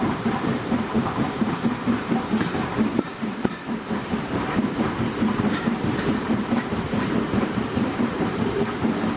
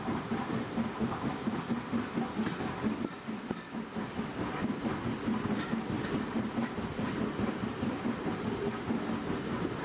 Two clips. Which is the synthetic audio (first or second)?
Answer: first